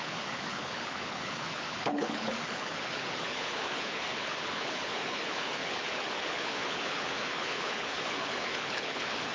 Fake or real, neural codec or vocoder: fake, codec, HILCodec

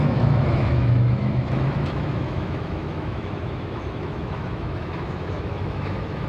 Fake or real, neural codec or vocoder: fake, autoencoder, DAC-VAE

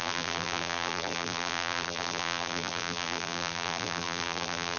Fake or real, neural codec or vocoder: fake, vocoder, BigVGAN v2